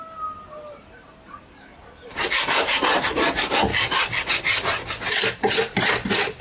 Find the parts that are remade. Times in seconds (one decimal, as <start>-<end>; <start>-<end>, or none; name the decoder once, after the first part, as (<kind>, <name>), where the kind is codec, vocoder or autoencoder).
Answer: none